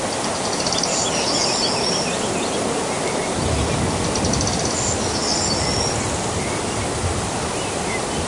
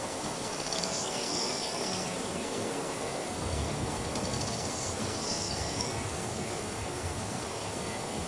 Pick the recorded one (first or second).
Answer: first